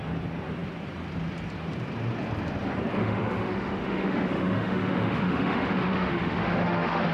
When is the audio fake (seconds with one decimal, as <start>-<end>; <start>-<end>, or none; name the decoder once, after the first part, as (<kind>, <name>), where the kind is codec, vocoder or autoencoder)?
3.0-7.1 (autoencoder, DAC-VAE)